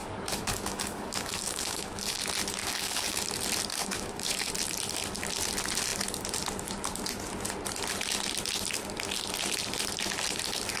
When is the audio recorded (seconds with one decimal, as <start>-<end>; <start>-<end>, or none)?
2.2-2.6; 3.2-3.7; 4.5-10.8

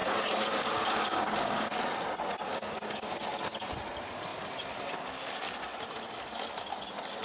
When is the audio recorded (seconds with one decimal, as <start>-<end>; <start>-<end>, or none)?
1.7-2.5; 3.1-7.2

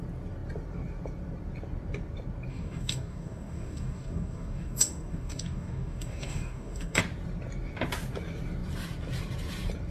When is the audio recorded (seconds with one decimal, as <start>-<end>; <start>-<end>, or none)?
0.0-2.5; 7.0-9.9

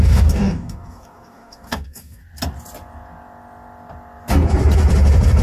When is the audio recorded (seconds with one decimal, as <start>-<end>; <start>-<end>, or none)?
2.2-5.4

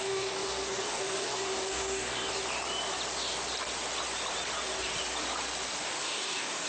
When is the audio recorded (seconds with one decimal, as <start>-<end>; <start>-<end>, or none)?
2.3-6.0

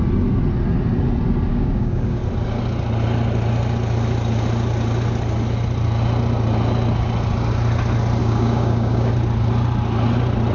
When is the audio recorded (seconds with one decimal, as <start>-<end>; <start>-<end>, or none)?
0.0-1.5; 2.2-8.2; 9.1-10.5

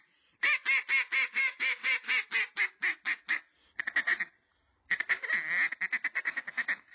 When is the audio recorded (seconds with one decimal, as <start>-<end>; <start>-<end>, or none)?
0.0-1.4; 1.9-6.9

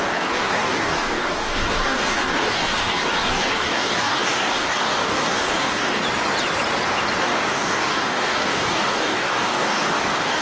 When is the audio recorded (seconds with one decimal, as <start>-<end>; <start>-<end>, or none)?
6.0-7.2